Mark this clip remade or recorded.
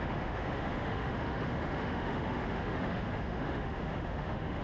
remade